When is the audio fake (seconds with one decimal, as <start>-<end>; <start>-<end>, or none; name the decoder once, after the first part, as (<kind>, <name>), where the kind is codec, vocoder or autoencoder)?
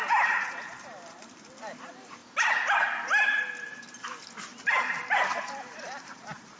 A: 0.0-2.2 (vocoder, BigVGAN v2); 5.3-6.6